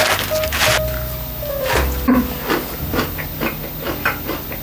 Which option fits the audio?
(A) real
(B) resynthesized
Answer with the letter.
A